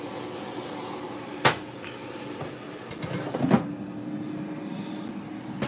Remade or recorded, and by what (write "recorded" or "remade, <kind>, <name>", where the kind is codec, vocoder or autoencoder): recorded